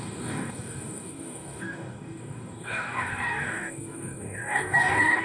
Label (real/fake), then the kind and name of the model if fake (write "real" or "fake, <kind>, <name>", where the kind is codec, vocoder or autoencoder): fake, codec, DAC